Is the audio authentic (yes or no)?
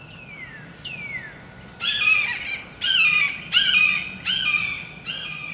yes